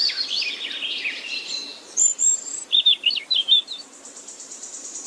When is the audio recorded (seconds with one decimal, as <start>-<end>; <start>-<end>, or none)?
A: none

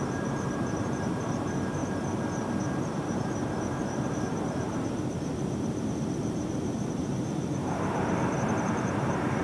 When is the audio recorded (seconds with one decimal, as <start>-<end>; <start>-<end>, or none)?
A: 1.8-2.9

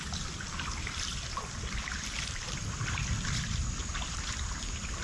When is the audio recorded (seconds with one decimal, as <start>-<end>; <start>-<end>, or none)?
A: 3.6-4.3

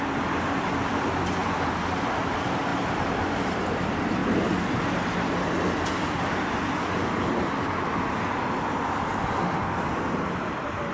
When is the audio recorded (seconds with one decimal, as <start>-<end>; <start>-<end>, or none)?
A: 0.0-1.4; 1.9-2.7; 3.7-10.9

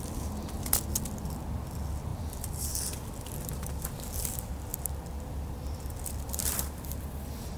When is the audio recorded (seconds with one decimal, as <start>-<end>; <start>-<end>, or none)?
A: 0.0-2.1; 4.2-4.7; 7.1-7.6